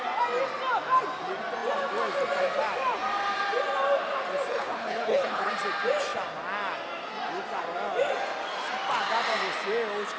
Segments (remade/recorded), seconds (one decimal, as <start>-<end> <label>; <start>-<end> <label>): 0.0-4.5 recorded; 4.5-5.5 remade; 5.5-10.2 recorded